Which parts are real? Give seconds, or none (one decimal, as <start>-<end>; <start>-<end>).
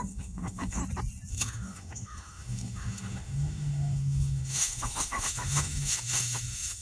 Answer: 0.8-1.3